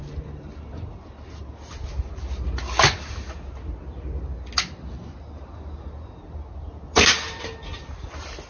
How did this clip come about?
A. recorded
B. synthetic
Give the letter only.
A